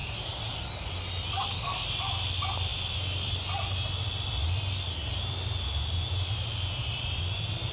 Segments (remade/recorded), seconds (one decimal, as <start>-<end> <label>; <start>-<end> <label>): 0.0-7.7 recorded